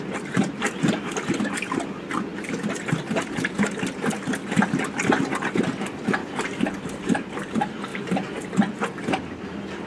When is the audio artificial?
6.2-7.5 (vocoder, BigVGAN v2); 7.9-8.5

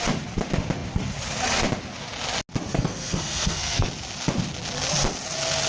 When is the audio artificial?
2.7-3.9 (codec, SNAC)

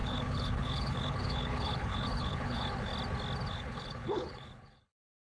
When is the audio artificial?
0.0-2.9 (codec, HILCodec); 3.5-5.3

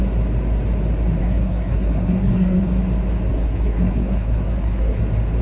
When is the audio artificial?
1.2-2.7 (codec, SNAC); 3.3-5.0